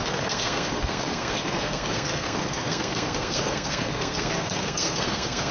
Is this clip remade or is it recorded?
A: remade